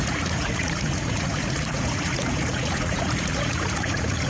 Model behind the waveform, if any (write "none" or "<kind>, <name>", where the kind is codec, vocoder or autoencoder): vocoder, Vocos